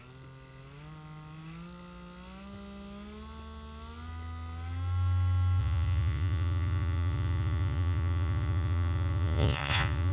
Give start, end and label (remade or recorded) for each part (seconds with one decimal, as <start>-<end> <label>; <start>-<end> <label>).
0.0-5.6 recorded; 5.6-10.1 remade